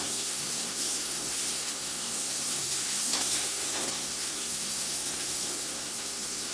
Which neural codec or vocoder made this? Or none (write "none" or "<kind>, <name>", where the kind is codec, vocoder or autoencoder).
codec, SNAC